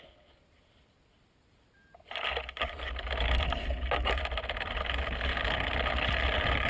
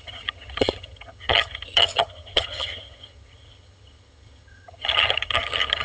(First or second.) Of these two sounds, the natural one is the first